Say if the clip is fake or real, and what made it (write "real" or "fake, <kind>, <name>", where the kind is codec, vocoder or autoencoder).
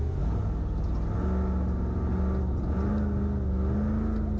real